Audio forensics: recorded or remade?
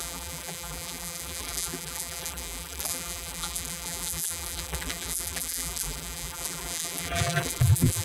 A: remade